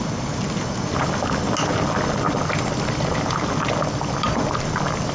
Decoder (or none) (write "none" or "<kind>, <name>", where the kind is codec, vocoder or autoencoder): none